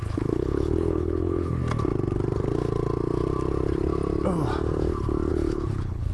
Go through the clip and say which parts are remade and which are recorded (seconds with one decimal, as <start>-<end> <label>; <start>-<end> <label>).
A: 0.0-1.6 remade; 1.6-5.3 recorded; 5.3-6.1 remade